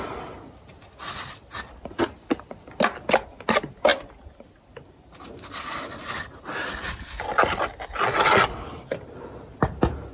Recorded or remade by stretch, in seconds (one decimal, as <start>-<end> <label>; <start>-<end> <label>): 0.0-10.1 recorded